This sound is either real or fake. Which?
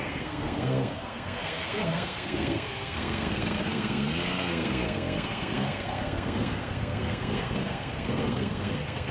fake